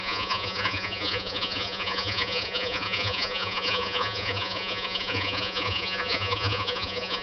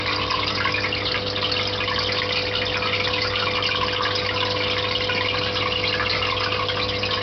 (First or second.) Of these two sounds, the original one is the second